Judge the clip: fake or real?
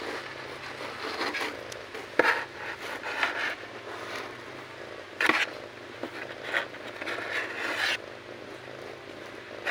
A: real